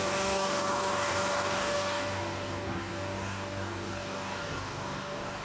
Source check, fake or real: fake